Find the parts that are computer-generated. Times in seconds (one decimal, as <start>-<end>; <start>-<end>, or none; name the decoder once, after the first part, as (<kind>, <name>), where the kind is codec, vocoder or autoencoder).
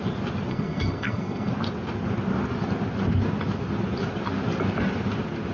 0.5-1.5 (codec, SNAC)